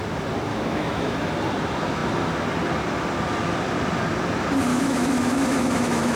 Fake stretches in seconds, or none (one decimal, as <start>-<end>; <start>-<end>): 0.5-1.3; 4.7-6.2